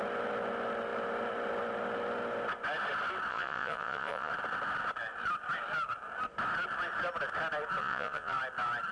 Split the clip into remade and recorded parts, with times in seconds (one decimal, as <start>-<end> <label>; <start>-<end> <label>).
0.0-3.3 recorded; 3.3-4.3 remade; 4.3-7.8 recorded; 7.8-8.4 remade; 8.4-8.9 recorded